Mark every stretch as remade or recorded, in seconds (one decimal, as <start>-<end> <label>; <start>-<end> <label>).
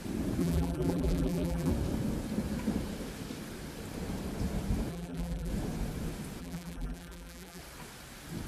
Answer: 0.0-0.4 recorded; 0.4-1.7 remade; 1.7-4.9 recorded; 4.9-5.5 remade; 5.5-6.4 recorded; 6.4-7.6 remade; 7.6-8.5 recorded